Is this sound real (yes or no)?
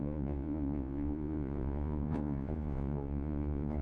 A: no